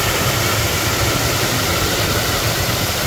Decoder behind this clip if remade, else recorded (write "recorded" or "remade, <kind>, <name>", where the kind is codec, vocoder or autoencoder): recorded